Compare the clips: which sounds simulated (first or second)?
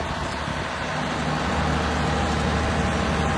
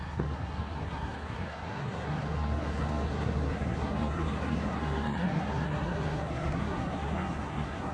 second